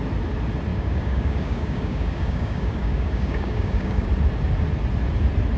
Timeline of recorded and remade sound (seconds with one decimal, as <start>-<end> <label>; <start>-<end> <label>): 0.0-0.7 recorded; 0.7-4.1 remade; 4.1-5.6 recorded